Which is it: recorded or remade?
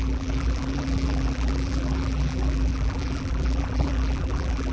remade